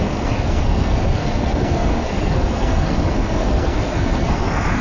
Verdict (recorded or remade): remade